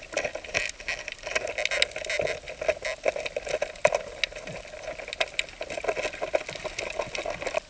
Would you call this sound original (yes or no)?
yes